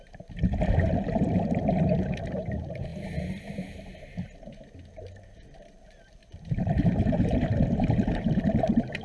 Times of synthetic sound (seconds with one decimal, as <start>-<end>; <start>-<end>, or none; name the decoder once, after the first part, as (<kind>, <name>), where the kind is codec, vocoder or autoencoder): 0.0-9.0 (vocoder, BigVGAN v2)